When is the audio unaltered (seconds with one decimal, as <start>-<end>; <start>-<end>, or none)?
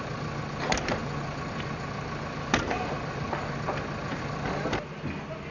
0.0-5.5